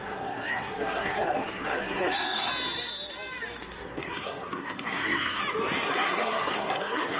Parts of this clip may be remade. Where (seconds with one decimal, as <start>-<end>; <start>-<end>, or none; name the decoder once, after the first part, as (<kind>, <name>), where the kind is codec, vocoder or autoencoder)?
0.0-2.5 (codec, SNAC); 3.6-5.4; 5.9-7.2